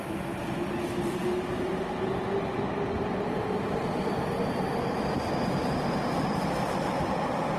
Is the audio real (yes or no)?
yes